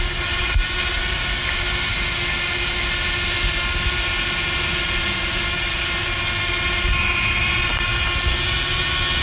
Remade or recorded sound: recorded